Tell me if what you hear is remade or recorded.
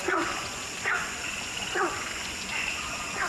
remade